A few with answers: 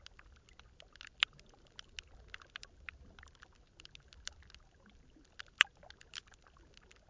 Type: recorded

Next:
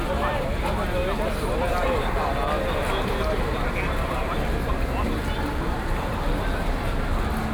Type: recorded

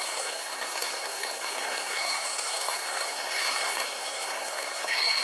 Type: remade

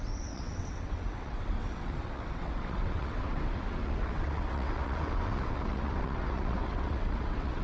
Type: remade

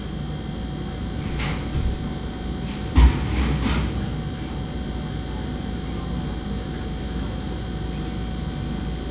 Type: recorded